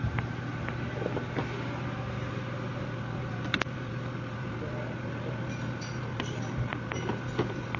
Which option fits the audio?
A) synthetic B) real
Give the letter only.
B